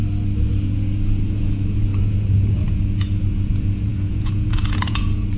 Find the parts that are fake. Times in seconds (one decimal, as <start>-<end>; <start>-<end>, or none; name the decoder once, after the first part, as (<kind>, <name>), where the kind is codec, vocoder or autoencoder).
0.6-5.4 (vocoder, Vocos)